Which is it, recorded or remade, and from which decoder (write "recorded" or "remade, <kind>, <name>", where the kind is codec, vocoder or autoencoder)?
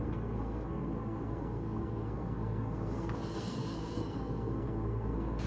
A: remade, codec, SNAC